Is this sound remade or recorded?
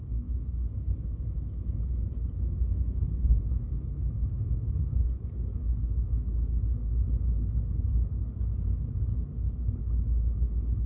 remade